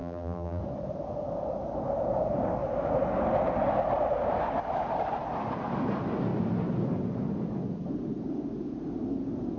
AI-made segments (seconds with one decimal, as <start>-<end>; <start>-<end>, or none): 0.0-0.6

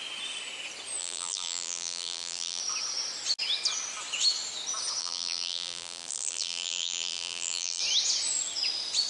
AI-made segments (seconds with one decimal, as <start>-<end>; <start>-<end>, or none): 1.0-2.6; 5.0-7.8

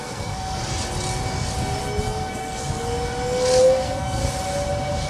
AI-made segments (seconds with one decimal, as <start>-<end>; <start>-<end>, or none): 0.0-0.6; 2.0-2.9; 3.6-4.2

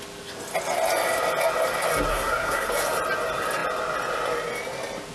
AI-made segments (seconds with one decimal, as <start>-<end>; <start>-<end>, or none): 2.1-2.7

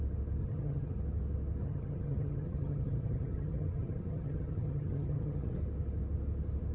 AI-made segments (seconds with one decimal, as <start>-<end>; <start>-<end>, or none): 0.4-1.0; 1.6-5.6